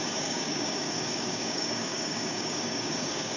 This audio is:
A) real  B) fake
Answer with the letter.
B